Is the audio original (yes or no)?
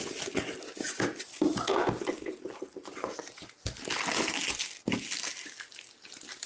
yes